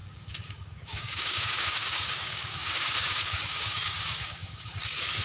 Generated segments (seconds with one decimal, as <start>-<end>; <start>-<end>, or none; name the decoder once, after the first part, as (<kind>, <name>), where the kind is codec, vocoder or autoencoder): 0.0-5.2 (codec, DAC)